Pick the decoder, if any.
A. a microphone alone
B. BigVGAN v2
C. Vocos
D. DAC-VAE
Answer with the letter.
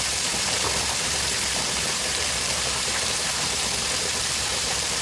B